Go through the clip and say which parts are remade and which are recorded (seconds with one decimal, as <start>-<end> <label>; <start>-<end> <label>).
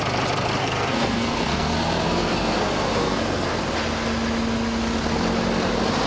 0.0-0.6 recorded; 0.6-3.5 remade; 3.5-6.1 recorded